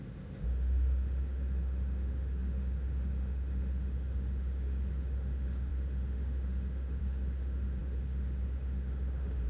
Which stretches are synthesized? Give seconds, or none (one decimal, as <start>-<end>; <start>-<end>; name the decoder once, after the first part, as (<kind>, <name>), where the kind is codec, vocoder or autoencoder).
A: 0.0-9.5 (autoencoder, DAC-VAE)